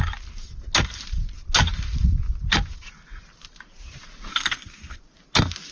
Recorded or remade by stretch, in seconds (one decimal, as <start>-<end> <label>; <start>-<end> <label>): 0.0-4.3 recorded; 4.3-5.0 remade; 5.0-5.7 recorded